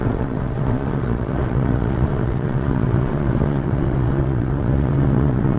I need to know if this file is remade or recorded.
remade